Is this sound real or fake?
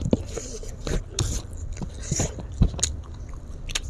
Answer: real